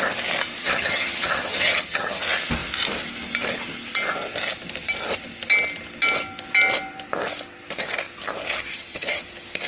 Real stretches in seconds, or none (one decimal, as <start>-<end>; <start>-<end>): 0.0-0.6; 2.2-8.7; 9.2-9.7